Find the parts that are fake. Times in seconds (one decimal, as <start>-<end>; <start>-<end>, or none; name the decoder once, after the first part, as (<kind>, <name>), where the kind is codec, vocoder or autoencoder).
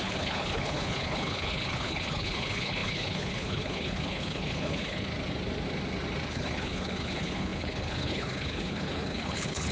0.0-5.1 (codec, HILCodec); 6.3-9.7